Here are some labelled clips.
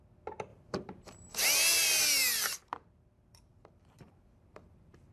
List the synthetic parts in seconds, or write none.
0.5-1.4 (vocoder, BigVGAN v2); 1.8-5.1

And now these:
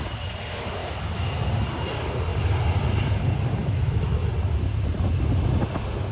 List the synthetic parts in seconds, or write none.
0.8-1.3 (autoencoder, DAC-VAE); 3.6-4.3